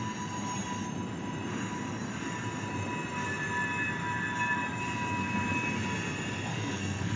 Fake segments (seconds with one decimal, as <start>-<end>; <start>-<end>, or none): 6.5-7.2